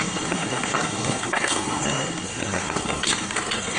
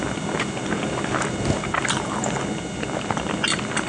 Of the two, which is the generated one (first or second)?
first